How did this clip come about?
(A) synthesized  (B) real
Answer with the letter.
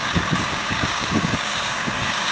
A